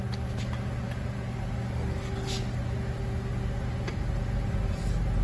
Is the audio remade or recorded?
recorded